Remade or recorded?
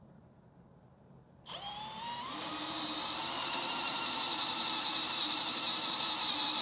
remade